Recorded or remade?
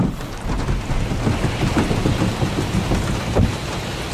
recorded